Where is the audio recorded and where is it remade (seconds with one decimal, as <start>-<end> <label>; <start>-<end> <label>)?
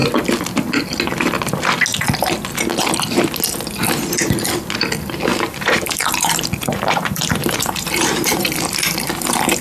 0.0-5.3 recorded; 5.3-9.6 remade